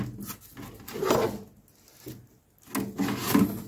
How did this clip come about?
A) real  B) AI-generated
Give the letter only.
A